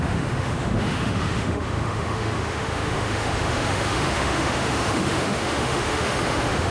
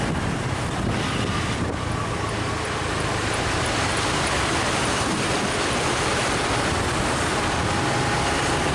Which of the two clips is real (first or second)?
second